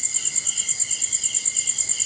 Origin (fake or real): real